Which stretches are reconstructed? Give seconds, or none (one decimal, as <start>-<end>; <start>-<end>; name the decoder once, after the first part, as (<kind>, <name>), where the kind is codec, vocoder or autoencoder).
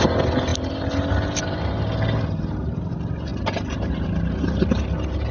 none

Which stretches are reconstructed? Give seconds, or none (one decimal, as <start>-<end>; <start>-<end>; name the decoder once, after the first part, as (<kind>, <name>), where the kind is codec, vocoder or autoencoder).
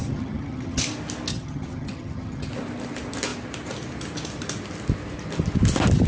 0.0-0.8 (vocoder, HiFi-GAN); 1.3-2.5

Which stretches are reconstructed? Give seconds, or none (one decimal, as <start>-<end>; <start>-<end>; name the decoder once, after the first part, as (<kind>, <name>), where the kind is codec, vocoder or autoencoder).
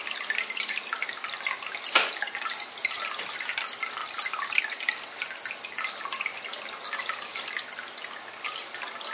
none